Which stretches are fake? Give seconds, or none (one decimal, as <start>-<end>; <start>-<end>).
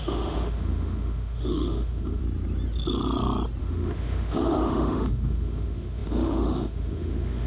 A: 0.0-2.2; 3.6-7.5